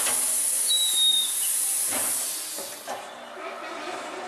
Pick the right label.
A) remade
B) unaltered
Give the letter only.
B